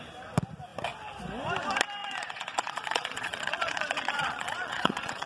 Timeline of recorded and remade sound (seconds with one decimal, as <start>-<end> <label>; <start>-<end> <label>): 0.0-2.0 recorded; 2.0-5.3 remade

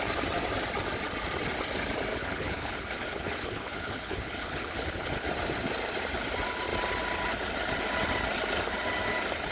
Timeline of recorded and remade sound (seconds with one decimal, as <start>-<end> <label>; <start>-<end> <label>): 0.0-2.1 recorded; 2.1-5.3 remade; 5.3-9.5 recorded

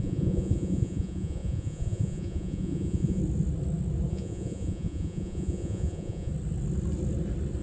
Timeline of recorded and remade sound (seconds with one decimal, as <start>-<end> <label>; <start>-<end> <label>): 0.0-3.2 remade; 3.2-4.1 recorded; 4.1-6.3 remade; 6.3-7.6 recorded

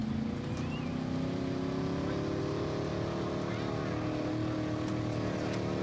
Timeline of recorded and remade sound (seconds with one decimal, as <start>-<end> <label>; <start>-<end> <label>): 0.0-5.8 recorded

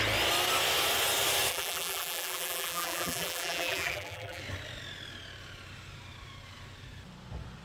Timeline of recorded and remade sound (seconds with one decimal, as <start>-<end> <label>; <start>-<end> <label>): 0.0-1.5 recorded; 1.5-4.4 remade; 4.4-7.6 recorded

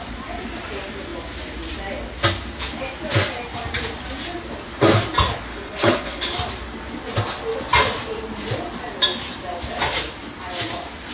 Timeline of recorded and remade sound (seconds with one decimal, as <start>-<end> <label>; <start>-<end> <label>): 0.0-5.5 recorded; 5.5-6.3 remade; 6.3-11.1 recorded

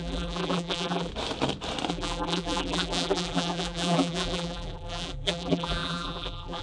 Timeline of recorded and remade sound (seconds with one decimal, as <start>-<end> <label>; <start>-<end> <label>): 0.0-1.1 remade; 1.1-1.9 recorded; 1.9-6.6 remade

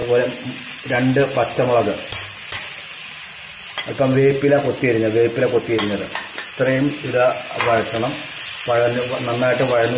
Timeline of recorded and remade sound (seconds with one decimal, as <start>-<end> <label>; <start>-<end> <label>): 0.0-10.0 recorded